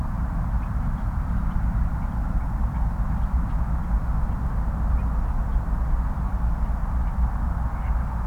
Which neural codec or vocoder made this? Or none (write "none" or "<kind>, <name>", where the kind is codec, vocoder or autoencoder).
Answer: none